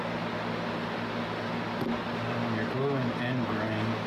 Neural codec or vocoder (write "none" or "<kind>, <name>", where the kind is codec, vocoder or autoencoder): none